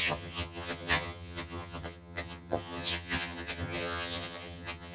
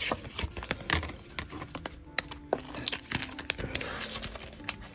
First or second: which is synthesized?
first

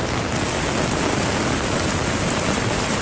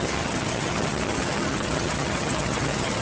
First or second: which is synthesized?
second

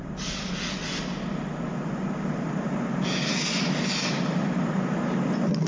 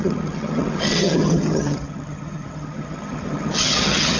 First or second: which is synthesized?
second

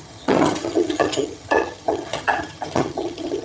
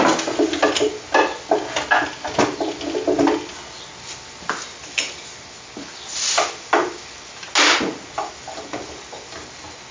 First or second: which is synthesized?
first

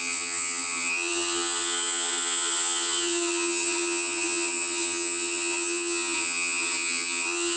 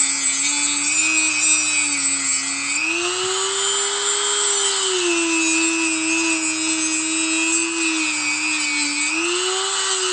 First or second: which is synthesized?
first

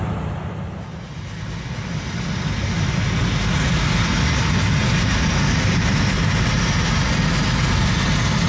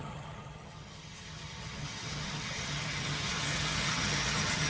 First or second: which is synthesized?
second